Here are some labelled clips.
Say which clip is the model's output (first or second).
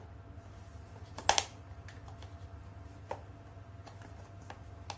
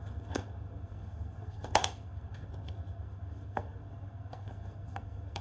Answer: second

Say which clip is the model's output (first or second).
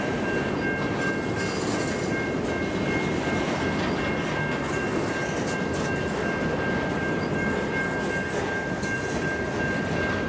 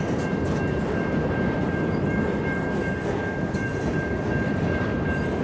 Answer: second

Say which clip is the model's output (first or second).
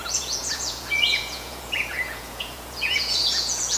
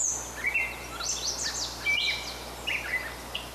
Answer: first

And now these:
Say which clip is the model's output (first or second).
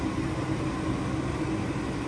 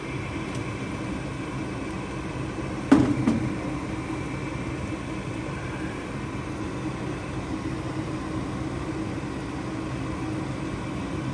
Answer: second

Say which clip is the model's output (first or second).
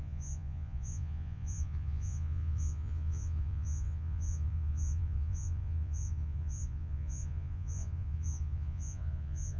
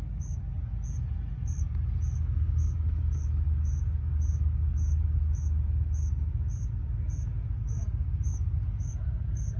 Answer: first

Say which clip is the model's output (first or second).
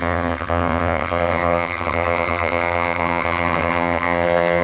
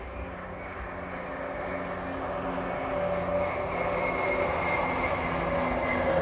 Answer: first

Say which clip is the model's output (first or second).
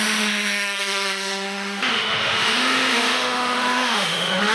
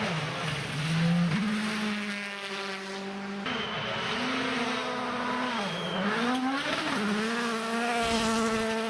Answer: first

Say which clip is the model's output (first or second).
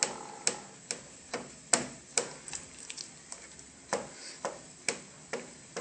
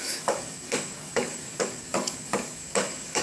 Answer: second